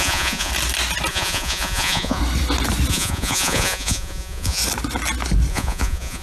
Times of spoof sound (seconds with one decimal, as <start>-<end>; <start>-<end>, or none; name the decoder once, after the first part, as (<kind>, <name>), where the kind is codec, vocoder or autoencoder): 0.0-0.5 (vocoder, Vocos); 1.1-2.2; 2.9-4.6; 5.5-6.2